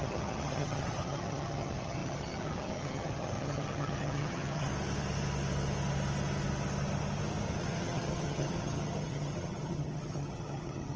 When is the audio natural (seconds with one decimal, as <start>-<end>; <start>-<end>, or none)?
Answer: 4.7-7.6